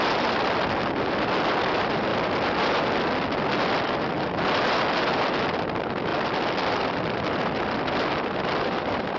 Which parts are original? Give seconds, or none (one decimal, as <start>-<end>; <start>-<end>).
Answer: 0.0-9.2